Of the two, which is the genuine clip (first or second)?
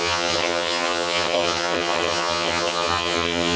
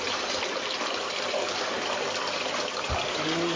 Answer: second